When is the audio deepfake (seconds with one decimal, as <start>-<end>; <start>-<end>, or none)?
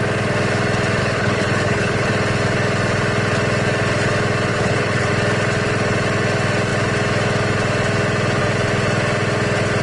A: 1.0-2.1; 4.5-5.1